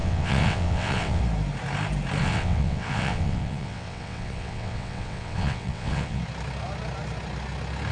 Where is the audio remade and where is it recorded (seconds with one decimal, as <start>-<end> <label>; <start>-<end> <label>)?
0.0-1.2 remade; 1.2-2.2 recorded; 2.2-6.2 remade; 6.2-7.9 recorded